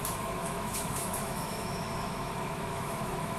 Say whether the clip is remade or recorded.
remade